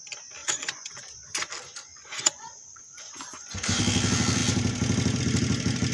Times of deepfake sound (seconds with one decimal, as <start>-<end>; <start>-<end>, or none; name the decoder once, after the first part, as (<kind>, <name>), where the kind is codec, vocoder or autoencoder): 0.4-1.5 (vocoder, Vocos); 1.9-3.8